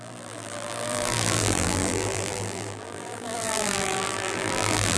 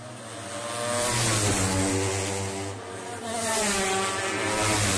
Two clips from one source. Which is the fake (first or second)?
first